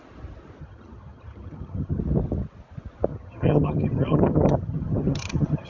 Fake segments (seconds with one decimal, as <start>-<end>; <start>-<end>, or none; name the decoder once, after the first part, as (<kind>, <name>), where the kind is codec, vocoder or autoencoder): 0.6-2.0 (vocoder, HiFi-GAN); 3.1-5.7

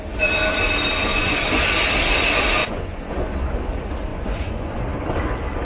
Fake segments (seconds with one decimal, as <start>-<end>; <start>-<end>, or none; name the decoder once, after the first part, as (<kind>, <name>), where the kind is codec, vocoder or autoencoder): 1.1-1.6 (vocoder, Vocos); 2.6-3.3; 4.1-4.8

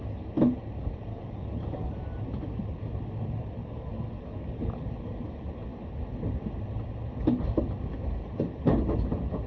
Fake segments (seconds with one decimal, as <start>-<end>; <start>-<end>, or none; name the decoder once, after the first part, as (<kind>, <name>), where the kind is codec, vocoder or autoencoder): 1.1-2.0 (codec, DAC); 3.6-4.7

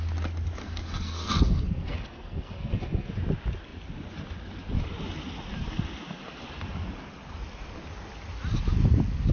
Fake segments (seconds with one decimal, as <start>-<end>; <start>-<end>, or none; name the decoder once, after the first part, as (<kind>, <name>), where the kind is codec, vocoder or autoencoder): 0.6-3.1 (codec, SNAC)

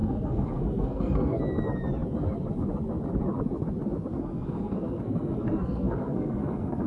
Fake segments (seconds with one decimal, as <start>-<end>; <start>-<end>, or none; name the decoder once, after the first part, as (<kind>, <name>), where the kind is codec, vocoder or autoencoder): 0.0-1.4 (codec, SNAC); 4.1-6.9